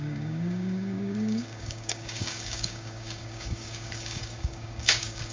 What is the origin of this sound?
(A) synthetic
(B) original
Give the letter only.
A